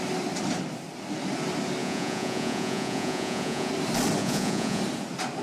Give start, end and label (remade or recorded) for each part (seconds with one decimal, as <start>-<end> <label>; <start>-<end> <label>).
0.0-1.8 recorded; 1.8-3.7 remade; 3.7-4.2 recorded; 4.2-4.8 remade; 4.8-5.4 recorded